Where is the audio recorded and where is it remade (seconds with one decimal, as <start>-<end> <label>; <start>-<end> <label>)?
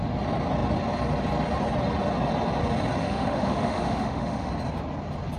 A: 0.0-3.0 recorded; 3.0-4.5 remade; 4.5-5.4 recorded